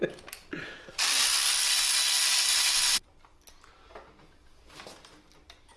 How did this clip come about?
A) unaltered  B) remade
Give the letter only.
A